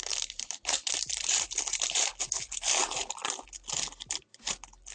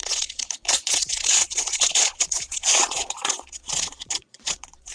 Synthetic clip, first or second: second